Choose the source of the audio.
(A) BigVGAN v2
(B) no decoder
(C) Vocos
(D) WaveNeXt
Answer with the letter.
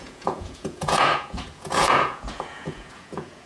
C